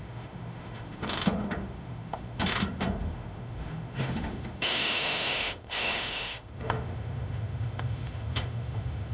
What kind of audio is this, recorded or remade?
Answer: remade